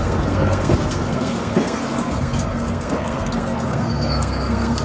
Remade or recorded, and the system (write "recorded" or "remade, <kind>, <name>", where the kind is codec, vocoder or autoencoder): remade, codec, SNAC